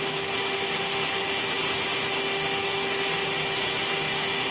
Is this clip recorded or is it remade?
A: recorded